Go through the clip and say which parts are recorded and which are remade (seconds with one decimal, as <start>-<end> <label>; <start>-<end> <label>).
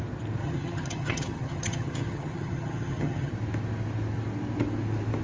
0.0-0.4 recorded; 0.4-3.3 remade; 3.3-5.2 recorded